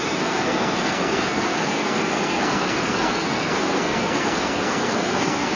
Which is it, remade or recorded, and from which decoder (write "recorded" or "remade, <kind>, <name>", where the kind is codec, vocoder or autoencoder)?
remade, codec, SNAC